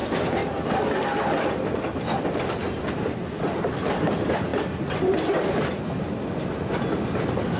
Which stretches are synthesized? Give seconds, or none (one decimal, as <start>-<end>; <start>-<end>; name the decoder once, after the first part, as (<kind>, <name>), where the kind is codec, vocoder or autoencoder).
none